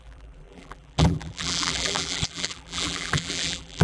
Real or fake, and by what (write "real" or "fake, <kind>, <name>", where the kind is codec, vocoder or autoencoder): fake, vocoder, BigVGAN v2